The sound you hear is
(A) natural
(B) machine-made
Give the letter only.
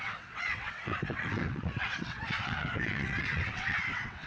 B